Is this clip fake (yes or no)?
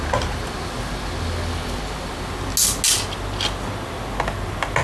no